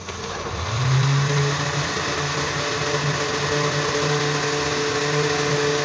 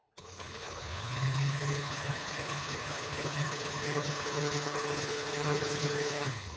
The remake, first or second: second